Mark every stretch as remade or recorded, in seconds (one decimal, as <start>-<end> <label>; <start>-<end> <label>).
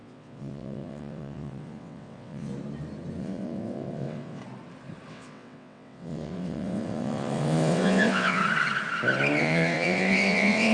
0.0-2.5 remade; 2.5-3.2 recorded; 3.2-4.4 remade; 4.4-5.1 recorded; 5.1-8.4 remade; 8.4-9.4 recorded; 9.4-10.7 remade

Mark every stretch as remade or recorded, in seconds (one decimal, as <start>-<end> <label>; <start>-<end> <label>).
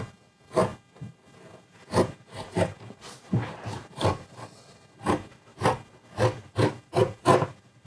0.0-7.9 recorded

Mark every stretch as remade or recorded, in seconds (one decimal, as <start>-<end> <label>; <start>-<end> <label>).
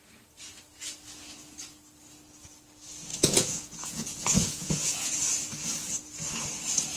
0.0-3.1 recorded; 3.1-5.1 remade; 5.1-7.0 recorded